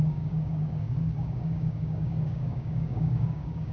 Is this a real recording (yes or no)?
no